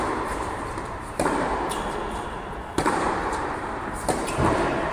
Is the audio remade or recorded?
remade